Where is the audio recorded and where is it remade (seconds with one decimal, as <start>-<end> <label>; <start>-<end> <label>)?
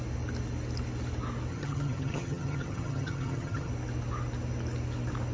0.0-1.5 recorded; 1.5-3.7 remade; 3.7-5.3 recorded